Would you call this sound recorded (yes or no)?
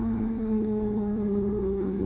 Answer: no